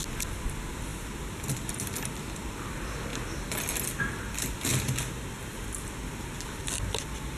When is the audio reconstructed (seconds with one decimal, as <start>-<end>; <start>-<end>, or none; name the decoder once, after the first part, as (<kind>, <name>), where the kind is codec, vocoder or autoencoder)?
none